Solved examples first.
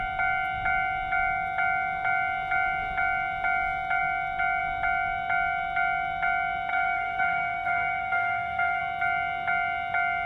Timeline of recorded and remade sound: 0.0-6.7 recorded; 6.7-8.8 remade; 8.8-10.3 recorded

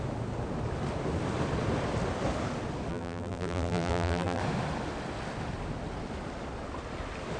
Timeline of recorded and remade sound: 0.0-2.9 recorded; 2.9-4.4 remade; 4.4-7.4 recorded

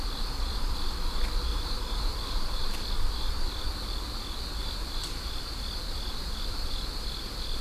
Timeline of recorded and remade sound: 0.0-1.5 recorded; 1.5-2.8 remade; 2.8-4.6 recorded; 4.6-5.3 remade; 5.3-7.6 recorded

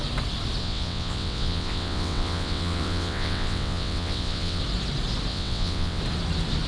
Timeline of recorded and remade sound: 0.0-0.6 recorded; 0.6-4.6 remade; 4.6-5.3 recorded; 5.3-6.0 remade; 6.0-6.7 recorded

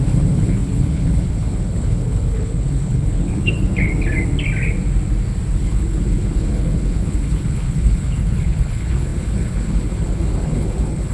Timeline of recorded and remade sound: 0.0-3.9 remade; 3.9-5.6 recorded; 5.6-11.1 remade

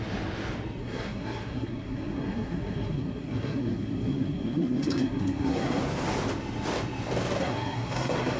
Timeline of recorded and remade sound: 0.0-0.8 recorded; 0.8-5.8 remade; 5.8-7.4 recorded; 7.4-8.4 remade

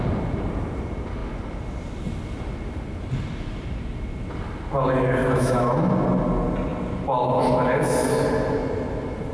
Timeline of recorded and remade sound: 0.0-5.2 recorded; 5.2-5.9 remade; 5.9-9.3 recorded

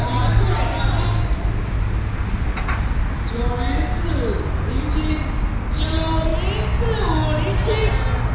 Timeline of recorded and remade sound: 0.0-8.3 recorded